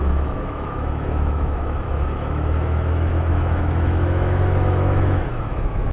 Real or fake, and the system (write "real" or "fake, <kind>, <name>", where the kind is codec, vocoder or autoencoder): fake, autoencoder, DAC-VAE